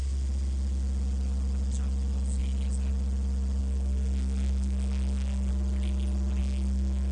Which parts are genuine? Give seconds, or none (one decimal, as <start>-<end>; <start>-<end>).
0.0-3.6; 5.5-6.4